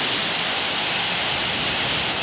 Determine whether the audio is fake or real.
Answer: real